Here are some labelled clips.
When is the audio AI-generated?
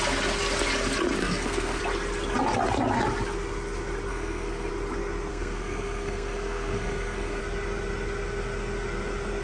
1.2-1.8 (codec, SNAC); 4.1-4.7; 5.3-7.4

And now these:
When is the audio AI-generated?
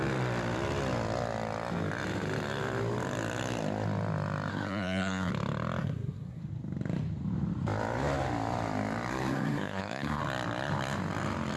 4.5-5.3 (codec, SNAC); 5.8-6.4; 9.1-10.2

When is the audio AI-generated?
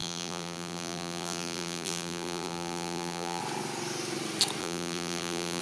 0.0-3.4 (vocoder, BigVGAN v2); 4.6-5.6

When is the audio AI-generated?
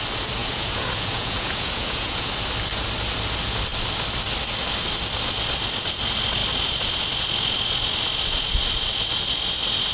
0.4-2.3 (vocoder, Vocos)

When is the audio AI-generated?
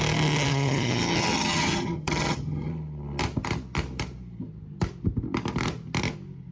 0.5-2.7 (vocoder, HiFi-GAN)